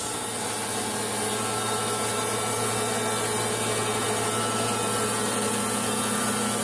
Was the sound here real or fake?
real